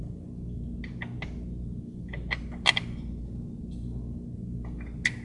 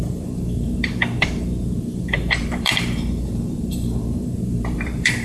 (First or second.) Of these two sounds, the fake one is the second